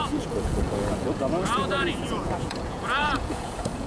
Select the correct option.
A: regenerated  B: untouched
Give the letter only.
A